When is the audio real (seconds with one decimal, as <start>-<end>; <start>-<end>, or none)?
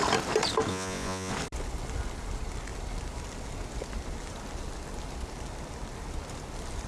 0.0-0.7; 1.3-6.9